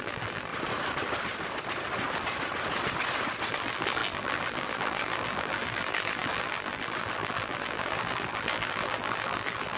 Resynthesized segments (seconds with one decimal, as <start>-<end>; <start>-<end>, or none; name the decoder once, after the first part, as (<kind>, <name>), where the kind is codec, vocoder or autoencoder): 0.0-0.5 (vocoder, BigVGAN v2); 3.5-9.8